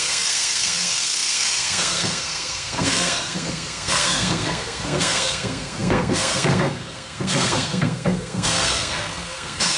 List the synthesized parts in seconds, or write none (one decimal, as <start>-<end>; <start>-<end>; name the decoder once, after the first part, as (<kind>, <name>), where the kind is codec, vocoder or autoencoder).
0.0-9.8 (codec, SNAC)